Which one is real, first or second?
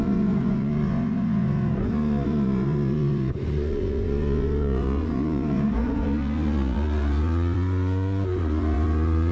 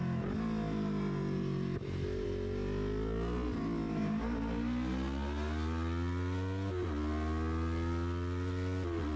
second